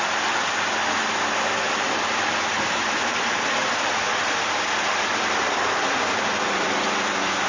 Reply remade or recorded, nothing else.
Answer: recorded